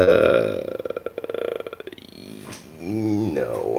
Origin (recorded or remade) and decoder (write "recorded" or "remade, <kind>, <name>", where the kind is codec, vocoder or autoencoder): recorded